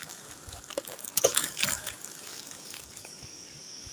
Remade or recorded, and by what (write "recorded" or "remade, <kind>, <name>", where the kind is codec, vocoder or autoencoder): remade, codec, DAC